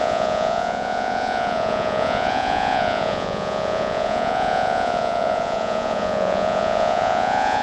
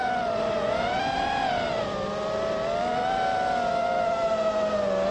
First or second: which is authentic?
second